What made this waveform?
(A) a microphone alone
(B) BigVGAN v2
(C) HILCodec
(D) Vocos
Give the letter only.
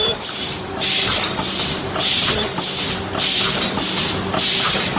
A